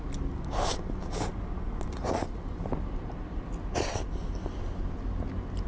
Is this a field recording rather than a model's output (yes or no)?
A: yes